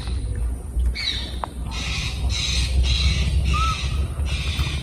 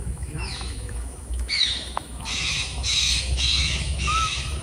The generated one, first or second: second